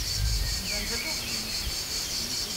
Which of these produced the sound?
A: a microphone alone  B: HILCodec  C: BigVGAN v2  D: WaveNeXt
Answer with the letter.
C